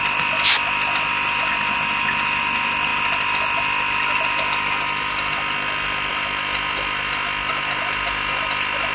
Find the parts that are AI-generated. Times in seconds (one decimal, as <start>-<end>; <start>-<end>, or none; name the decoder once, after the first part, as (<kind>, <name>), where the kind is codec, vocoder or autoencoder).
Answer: none